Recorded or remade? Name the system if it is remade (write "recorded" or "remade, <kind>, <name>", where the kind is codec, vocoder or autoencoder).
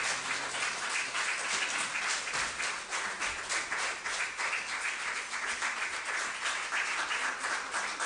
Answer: recorded